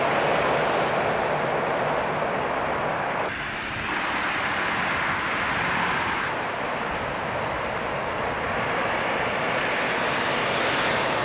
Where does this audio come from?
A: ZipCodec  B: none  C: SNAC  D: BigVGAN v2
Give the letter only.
B